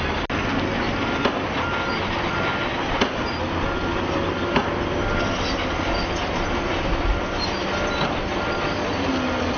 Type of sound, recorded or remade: recorded